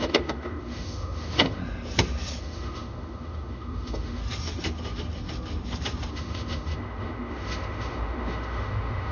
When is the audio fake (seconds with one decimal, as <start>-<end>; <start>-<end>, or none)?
0.0-1.6; 2.4-4.2; 6.1-9.1